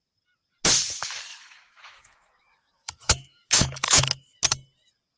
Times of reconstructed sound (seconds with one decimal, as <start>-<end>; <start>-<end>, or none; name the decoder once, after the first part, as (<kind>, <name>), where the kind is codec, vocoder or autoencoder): 1.3-4.4 (autoencoder, DAC-VAE)